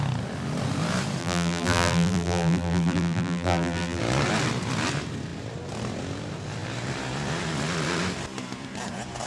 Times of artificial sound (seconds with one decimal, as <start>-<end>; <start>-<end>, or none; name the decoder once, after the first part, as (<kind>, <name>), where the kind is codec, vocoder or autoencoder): 1.2-4.0 (vocoder, BigVGAN v2)